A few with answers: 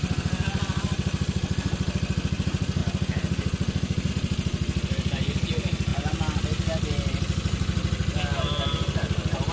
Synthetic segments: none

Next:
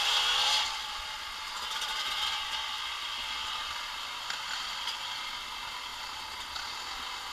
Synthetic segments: none

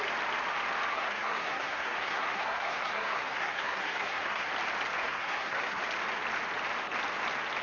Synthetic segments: 0.9-4.5 (codec, SNAC); 5.0-5.8

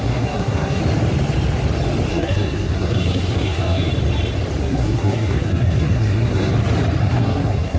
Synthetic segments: 0.0-0.8 (codec, SNAC); 2.1-3.9; 4.6-6.5; 7.0-7.8

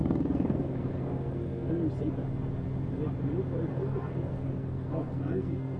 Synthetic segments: 0.0-1.9 (codec, SNAC); 3.7-5.8